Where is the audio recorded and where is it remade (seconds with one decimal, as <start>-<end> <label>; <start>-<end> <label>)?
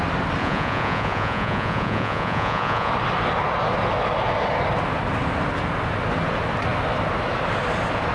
0.0-0.4 recorded; 0.4-2.9 remade; 2.9-8.1 recorded